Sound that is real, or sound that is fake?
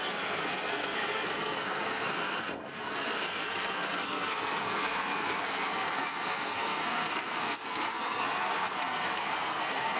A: fake